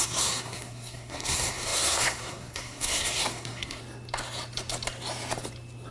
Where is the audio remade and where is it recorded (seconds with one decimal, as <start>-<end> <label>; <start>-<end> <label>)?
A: 0.0-3.8 remade; 3.8-5.9 recorded